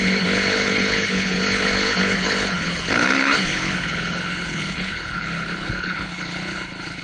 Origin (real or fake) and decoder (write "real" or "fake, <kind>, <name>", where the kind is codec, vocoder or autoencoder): fake, codec, HILCodec